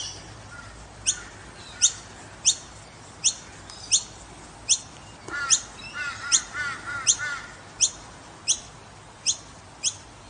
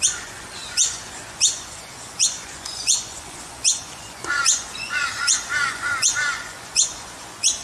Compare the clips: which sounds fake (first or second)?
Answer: second